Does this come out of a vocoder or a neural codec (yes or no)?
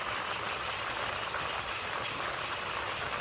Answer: no